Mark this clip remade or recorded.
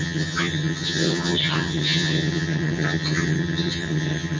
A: remade